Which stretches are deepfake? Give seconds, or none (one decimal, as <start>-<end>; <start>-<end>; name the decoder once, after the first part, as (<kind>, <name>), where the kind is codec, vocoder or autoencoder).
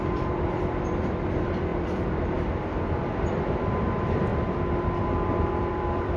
0.0-4.3 (vocoder, BigVGAN v2); 5.0-6.2